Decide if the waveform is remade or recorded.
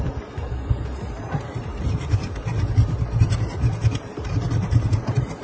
remade